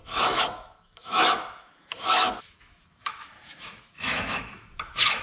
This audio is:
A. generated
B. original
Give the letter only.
A